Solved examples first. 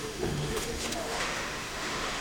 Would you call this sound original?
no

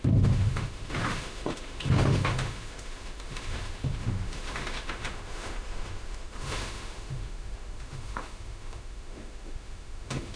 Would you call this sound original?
no